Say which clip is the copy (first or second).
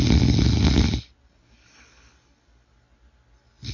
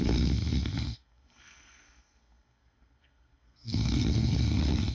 second